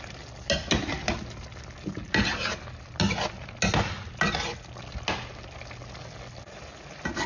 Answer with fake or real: real